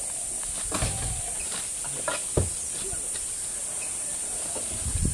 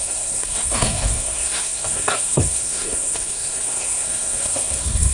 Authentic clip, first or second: first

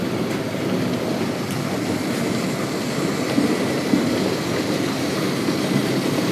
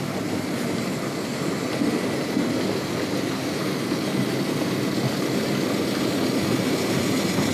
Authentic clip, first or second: second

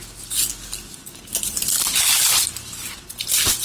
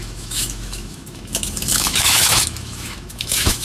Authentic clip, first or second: first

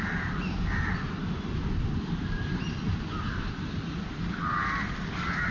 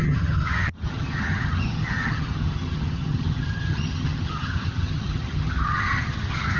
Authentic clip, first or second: first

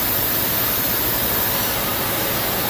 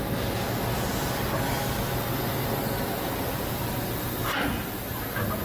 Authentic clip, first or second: second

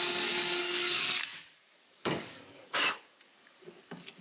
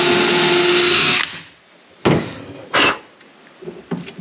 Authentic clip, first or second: second